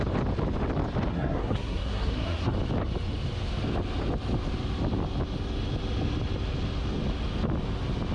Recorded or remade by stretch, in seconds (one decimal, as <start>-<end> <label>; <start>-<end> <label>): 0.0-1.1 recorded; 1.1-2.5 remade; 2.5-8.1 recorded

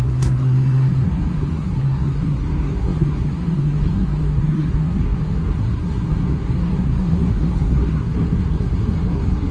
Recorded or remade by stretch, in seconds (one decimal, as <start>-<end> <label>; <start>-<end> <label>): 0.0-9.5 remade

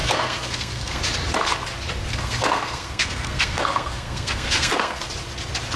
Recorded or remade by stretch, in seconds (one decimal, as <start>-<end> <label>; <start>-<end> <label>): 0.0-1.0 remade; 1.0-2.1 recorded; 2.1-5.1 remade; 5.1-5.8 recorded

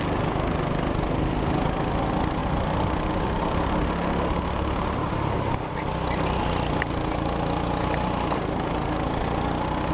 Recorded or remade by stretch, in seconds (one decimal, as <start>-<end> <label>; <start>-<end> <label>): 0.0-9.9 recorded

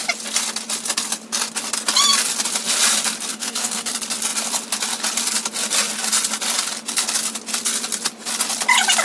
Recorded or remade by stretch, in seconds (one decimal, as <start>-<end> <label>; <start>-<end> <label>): 0.0-3.3 recorded; 3.3-3.9 remade; 3.9-9.0 recorded

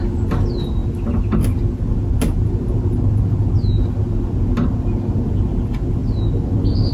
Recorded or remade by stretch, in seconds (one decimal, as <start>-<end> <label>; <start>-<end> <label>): 0.0-6.9 recorded

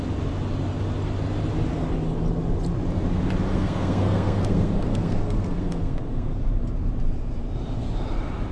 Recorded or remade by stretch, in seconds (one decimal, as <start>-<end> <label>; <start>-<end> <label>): 0.0-3.5 recorded; 3.5-6.5 remade; 6.5-8.5 recorded

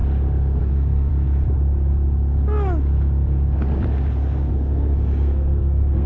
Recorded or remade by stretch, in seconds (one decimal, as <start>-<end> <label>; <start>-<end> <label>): 0.0-0.6 recorded; 0.6-1.1 remade; 1.1-4.5 recorded; 4.5-6.1 remade